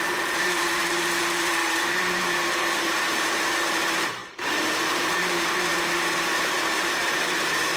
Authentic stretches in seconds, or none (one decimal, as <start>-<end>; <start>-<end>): none